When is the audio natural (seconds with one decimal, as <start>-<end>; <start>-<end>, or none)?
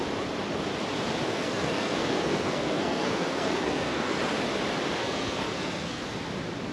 0.0-1.3; 4.2-5.0; 6.0-6.7